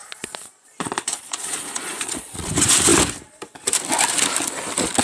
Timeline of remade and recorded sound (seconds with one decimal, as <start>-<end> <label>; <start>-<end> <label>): 0.0-2.5 remade; 2.5-5.0 recorded

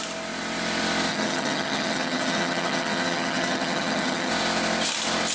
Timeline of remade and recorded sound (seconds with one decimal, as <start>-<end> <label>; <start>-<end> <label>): 0.0-1.1 recorded; 1.1-4.3 remade; 4.3-5.3 recorded

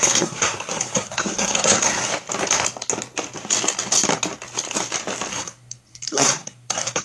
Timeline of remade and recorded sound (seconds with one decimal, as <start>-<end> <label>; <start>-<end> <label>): 0.0-2.1 remade; 2.1-5.3 recorded; 5.3-7.0 remade

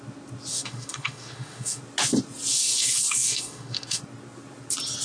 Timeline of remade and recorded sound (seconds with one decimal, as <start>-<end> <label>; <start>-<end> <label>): 0.0-0.5 recorded; 0.5-1.8 remade; 1.8-2.5 recorded; 2.5-4.0 remade; 4.0-5.0 recorded

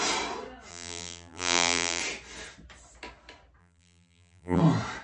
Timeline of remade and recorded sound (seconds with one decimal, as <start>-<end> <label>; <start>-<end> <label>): 0.0-0.7 recorded; 0.7-2.0 remade; 2.0-3.6 recorded; 3.6-4.6 remade; 4.6-5.0 recorded

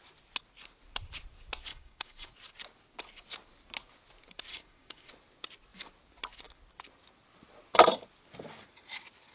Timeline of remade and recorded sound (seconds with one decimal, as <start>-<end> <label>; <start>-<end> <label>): 0.0-1.7 recorded; 1.7-2.3 remade; 2.3-4.5 recorded; 4.5-5.1 remade; 5.1-9.3 recorded

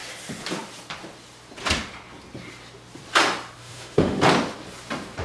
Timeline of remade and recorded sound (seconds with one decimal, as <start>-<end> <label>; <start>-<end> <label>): 0.0-3.6 recorded; 3.6-4.2 remade; 4.2-5.2 recorded

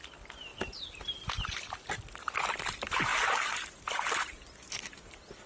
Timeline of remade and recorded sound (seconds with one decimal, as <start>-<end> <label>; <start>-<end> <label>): 0.0-0.5 recorded; 0.5-1.7 remade; 1.7-5.5 recorded